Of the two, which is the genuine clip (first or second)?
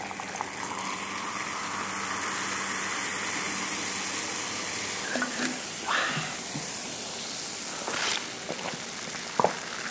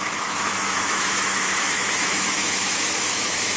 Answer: first